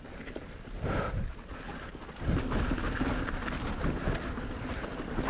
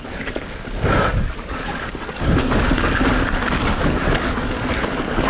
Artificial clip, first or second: second